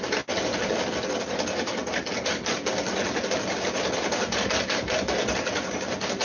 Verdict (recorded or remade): recorded